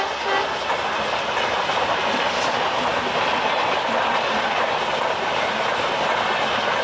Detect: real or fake real